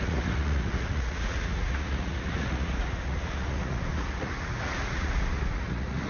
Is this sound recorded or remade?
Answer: remade